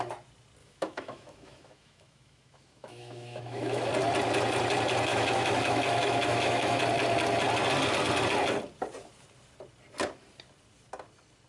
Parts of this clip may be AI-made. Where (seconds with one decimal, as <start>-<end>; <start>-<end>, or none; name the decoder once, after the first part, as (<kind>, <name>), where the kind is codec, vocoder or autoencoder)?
0.6-3.9 (autoencoder, DAC-VAE); 5.1-6.8